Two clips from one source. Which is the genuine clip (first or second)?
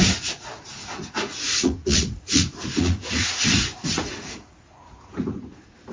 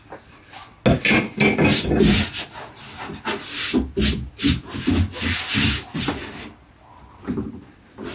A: second